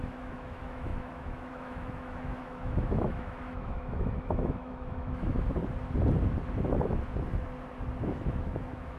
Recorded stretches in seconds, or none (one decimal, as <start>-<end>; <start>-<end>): 5.6-8.0